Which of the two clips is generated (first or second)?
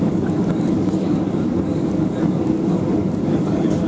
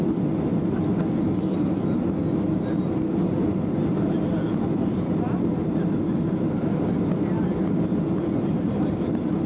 first